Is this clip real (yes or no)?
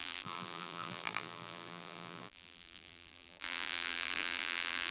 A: no